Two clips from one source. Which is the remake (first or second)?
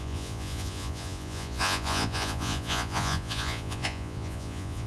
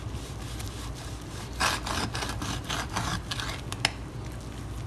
first